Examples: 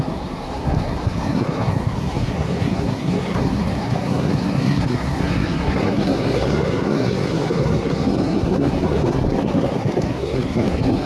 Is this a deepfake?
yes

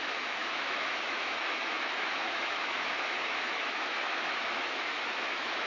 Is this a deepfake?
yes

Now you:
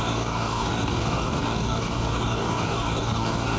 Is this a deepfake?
yes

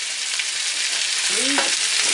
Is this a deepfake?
no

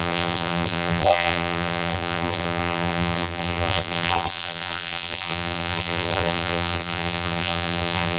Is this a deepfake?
yes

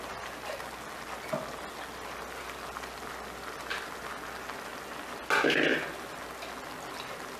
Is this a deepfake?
no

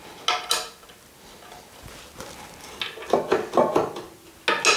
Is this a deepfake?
no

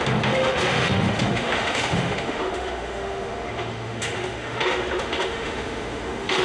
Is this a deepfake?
yes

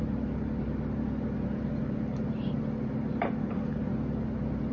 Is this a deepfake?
no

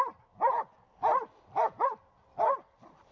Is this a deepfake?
no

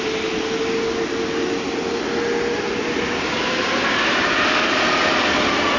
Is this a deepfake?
no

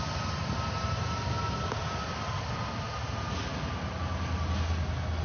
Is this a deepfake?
no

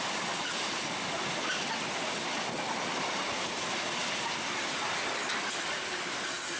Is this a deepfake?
no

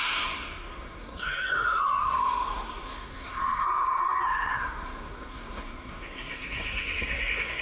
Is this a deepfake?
yes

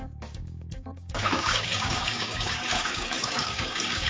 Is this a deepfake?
yes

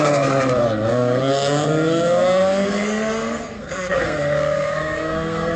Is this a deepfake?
yes